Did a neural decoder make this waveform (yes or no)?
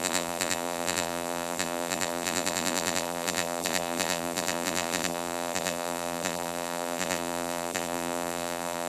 yes